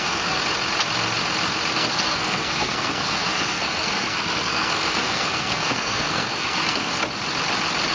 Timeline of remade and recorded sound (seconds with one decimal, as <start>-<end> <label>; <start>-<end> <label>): 0.0-0.4 remade; 0.4-1.7 recorded; 1.7-6.9 remade; 6.9-7.9 recorded